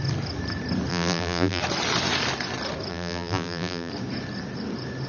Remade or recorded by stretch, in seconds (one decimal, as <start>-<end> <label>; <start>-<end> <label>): 0.0-0.9 recorded; 0.9-1.6 remade; 1.6-2.9 recorded; 2.9-3.9 remade; 3.9-5.1 recorded